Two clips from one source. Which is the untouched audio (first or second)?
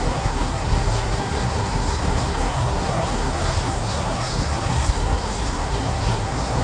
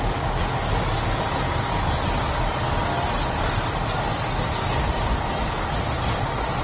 second